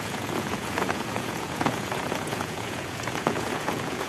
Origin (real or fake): fake